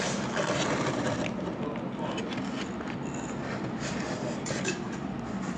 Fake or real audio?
real